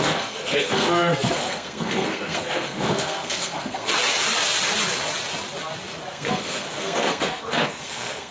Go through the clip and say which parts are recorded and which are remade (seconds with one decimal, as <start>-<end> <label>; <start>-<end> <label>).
0.0-3.9 remade; 3.9-6.1 recorded; 6.1-8.3 remade